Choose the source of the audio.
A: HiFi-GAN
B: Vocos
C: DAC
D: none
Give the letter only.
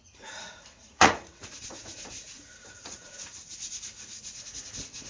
B